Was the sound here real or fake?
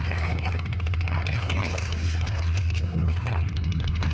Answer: fake